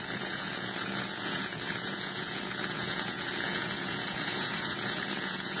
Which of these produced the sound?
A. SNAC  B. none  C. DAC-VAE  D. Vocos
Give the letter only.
D